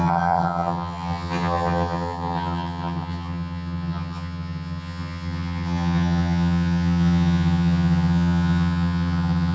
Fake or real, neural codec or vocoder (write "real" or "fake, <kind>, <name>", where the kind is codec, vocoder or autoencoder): fake, vocoder, HiFi-GAN